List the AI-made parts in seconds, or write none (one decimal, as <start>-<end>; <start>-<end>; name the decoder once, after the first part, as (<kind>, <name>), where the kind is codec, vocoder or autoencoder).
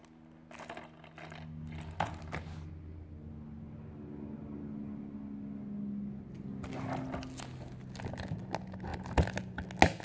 none